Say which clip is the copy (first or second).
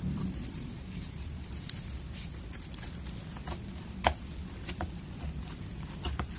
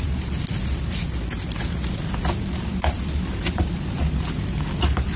first